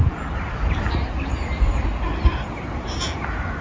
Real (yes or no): yes